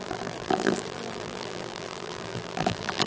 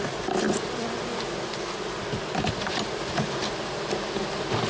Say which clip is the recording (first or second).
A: second